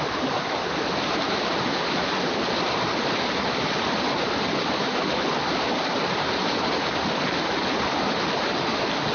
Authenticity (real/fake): real